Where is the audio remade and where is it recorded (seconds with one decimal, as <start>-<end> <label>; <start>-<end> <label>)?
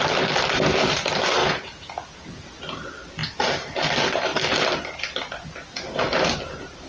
0.0-1.4 recorded; 1.4-2.5 remade; 2.5-6.9 recorded